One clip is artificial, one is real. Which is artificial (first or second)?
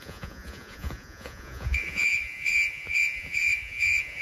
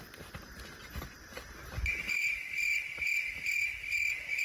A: first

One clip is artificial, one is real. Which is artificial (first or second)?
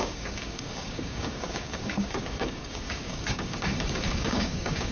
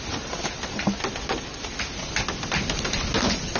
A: first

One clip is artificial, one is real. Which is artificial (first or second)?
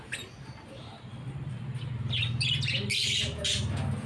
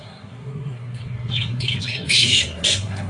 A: second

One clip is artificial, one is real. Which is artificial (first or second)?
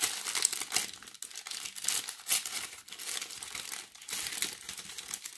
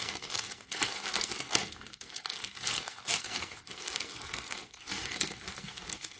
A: second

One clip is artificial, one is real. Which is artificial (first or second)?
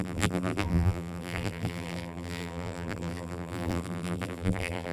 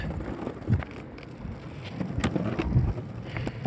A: first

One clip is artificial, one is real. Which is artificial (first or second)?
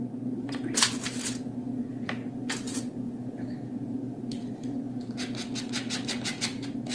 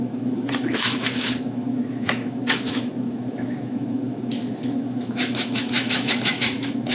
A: second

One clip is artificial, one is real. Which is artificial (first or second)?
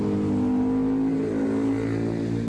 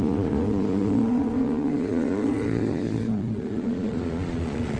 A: second